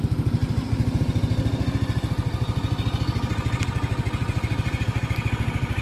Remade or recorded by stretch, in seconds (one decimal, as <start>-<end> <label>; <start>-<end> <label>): 0.0-5.8 recorded